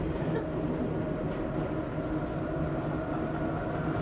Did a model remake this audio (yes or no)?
no